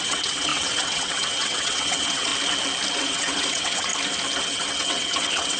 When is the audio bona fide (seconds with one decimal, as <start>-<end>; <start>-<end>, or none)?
2.3-2.9; 3.9-4.4